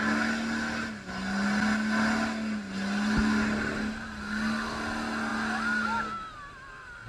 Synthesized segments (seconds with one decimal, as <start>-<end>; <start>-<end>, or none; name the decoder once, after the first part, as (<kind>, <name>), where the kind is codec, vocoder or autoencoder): none